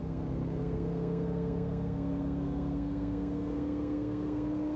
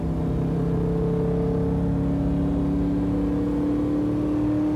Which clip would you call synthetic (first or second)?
first